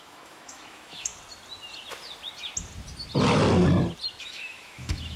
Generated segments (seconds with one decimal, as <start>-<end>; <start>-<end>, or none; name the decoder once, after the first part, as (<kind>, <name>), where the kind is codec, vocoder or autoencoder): 0.0-1.1 (autoencoder, DAC-VAE); 4.2-5.2